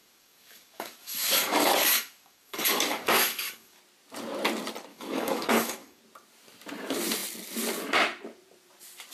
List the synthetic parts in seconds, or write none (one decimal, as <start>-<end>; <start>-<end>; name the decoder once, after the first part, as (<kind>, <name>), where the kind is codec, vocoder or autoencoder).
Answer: 0.0-3.8 (codec, DAC); 4.9-6.0